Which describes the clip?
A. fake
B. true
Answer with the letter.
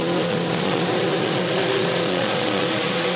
A